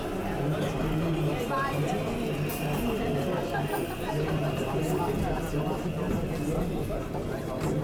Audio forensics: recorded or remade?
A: recorded